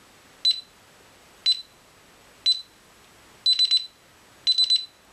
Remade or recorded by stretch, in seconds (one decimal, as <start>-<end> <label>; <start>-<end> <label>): 0.0-5.1 recorded